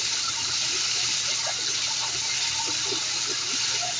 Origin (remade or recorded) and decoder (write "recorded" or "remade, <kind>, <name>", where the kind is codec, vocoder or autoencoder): recorded